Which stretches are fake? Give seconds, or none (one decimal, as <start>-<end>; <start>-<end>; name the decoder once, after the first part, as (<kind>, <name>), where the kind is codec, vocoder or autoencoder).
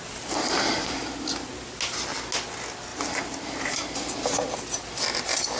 2.9-3.7 (vocoder, BigVGAN v2)